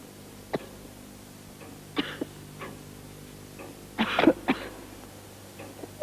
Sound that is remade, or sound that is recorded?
recorded